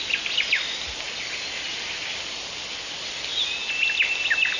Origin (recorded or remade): recorded